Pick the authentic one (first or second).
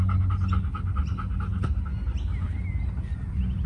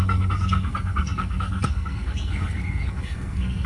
first